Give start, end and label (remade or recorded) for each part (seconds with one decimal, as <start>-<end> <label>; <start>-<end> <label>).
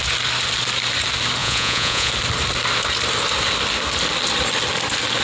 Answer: 0.0-1.4 recorded; 1.4-2.1 remade; 2.1-5.2 recorded